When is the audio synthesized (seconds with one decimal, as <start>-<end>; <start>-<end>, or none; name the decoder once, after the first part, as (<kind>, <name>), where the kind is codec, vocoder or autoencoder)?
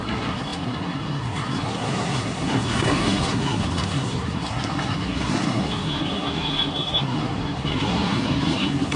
0.0-9.0 (codec, SNAC)